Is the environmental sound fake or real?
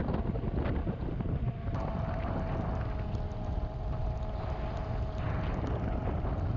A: real